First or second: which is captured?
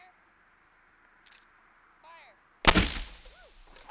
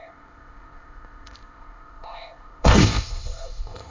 first